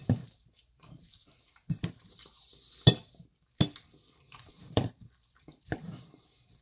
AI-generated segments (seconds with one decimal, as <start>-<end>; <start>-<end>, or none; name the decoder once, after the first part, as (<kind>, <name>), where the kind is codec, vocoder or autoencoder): 0.0-2.5 (vocoder, BigVGAN v2); 4.2-6.6